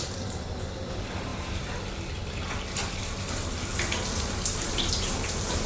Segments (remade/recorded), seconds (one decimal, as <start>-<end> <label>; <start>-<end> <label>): 0.0-1.3 remade; 1.3-4.7 recorded; 4.7-5.7 remade